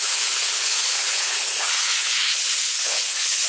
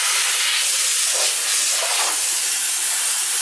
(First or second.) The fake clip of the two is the first